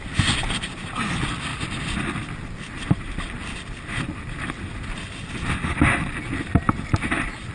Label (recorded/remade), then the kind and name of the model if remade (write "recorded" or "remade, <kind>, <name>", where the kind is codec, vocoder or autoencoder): recorded